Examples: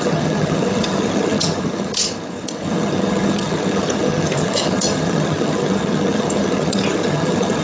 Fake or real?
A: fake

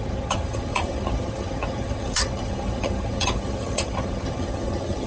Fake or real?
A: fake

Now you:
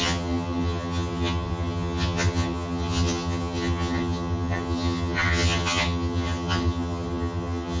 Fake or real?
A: fake